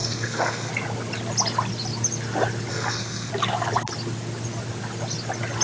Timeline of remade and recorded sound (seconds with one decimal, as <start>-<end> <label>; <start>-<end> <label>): 0.0-0.7 remade; 0.7-2.7 recorded; 2.7-3.3 remade; 3.3-5.6 recorded